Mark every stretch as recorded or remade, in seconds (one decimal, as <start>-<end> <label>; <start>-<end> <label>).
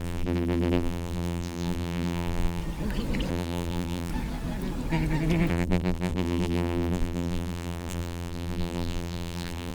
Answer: 0.0-2.6 remade; 2.6-3.3 recorded; 3.3-4.1 remade; 4.1-5.5 recorded; 5.5-9.7 remade